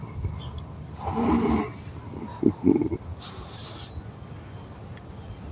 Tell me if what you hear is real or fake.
real